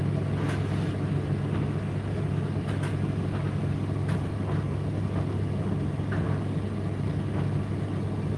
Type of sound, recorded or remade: recorded